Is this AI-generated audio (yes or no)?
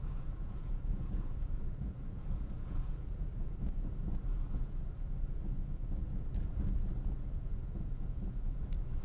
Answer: yes